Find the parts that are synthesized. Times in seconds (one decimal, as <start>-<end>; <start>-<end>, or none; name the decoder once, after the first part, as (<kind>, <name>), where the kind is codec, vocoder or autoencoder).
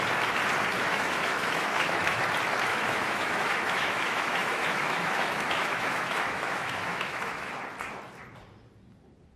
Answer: 0.9-2.2 (autoencoder, DAC-VAE); 2.7-7.5